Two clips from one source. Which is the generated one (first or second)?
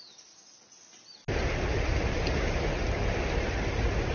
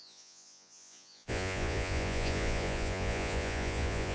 second